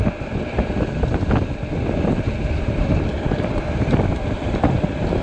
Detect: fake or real fake